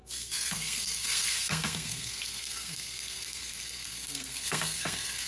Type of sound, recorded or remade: remade